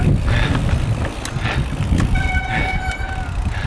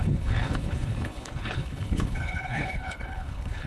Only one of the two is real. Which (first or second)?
first